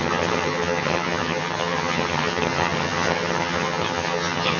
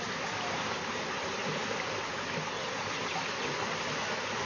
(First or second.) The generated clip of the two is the first